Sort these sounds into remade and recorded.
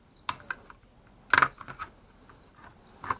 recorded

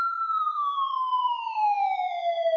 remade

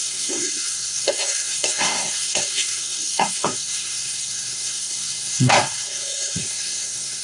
remade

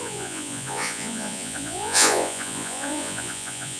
remade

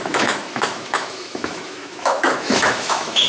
remade